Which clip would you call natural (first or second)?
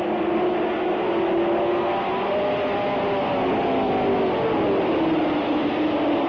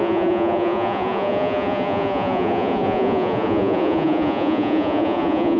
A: first